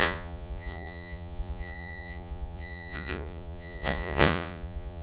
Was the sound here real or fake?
fake